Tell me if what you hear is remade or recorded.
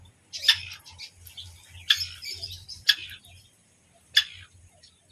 recorded